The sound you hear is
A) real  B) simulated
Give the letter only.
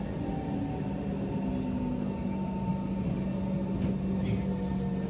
A